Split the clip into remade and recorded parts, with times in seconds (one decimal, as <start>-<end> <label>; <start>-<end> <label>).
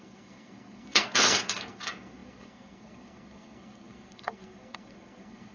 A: 0.0-5.5 remade